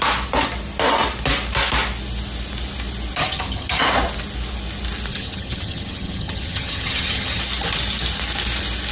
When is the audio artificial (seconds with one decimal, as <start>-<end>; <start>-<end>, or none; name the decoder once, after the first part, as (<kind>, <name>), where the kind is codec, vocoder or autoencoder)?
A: 3.2-3.8 (vocoder, HiFi-GAN); 5.1-7.4